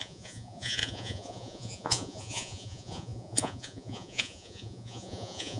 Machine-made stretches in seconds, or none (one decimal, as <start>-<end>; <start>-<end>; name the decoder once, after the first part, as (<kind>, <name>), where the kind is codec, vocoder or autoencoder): 0.0-5.6 (vocoder, Vocos)